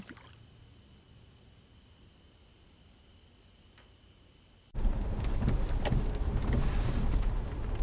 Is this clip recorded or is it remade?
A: recorded